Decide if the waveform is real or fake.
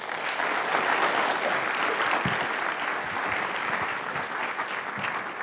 real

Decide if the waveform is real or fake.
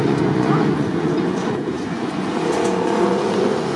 fake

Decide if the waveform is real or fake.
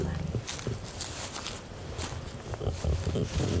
real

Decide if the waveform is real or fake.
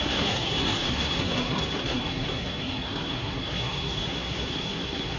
fake